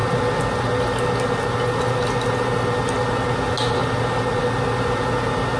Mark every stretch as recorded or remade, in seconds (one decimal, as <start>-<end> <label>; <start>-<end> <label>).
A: 0.0-5.6 recorded